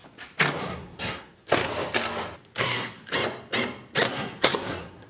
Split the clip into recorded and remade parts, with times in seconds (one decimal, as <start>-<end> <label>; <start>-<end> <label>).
0.0-0.6 recorded; 0.6-1.7 remade; 1.7-2.6 recorded; 2.6-3.1 remade; 3.1-4.1 recorded; 4.1-5.1 remade